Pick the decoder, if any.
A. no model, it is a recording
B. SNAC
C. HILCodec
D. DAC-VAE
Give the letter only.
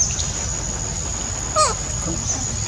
A